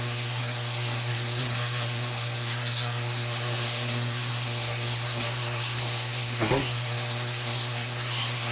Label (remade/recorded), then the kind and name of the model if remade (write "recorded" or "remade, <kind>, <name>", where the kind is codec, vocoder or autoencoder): remade, codec, SNAC